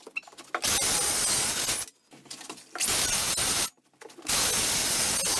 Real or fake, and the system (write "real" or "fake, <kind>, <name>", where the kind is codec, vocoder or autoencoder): real